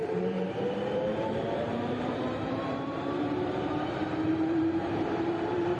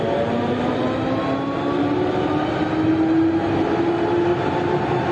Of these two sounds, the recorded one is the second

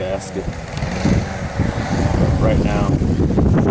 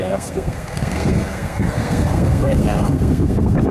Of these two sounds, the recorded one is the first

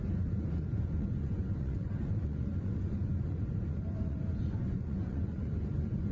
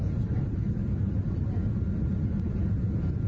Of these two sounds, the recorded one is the second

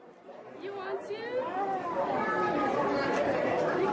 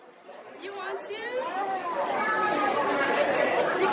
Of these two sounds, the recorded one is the first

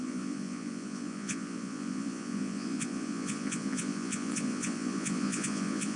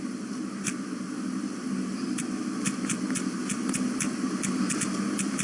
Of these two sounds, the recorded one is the second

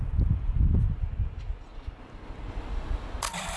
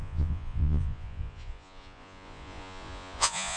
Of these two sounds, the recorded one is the first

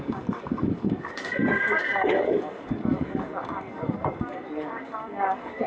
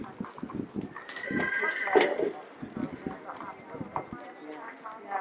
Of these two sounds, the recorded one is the second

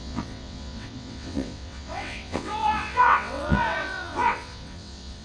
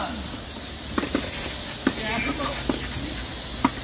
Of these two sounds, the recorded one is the second